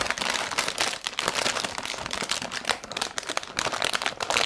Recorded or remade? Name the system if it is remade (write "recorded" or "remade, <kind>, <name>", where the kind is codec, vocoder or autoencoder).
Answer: recorded